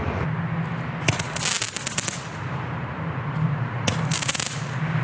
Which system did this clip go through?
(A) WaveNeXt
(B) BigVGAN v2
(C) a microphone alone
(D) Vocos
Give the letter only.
C